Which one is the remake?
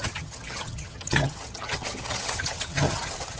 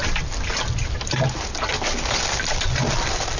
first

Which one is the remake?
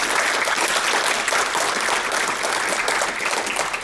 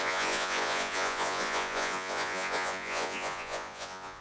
second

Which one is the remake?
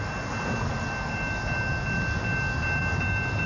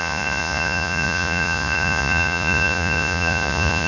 second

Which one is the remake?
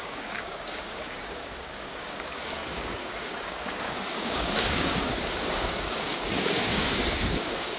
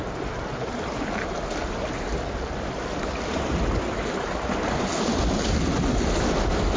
first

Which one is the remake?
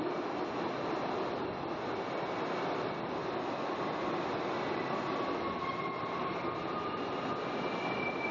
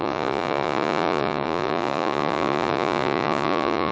second